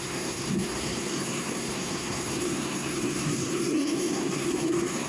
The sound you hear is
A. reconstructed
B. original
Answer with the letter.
A